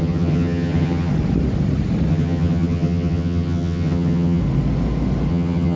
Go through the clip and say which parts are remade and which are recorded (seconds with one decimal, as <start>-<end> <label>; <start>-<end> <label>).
0.0-1.1 remade; 1.1-2.1 recorded; 2.1-4.4 remade; 4.4-5.3 recorded; 5.3-5.8 remade